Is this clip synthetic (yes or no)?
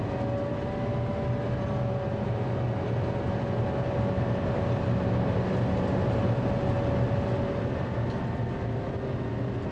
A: no